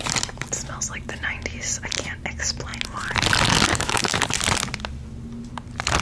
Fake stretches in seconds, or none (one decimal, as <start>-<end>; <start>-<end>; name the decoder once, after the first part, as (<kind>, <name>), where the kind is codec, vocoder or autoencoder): 3.7-4.2 (autoencoder, DAC-VAE)